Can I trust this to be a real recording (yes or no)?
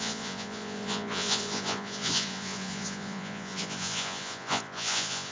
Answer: no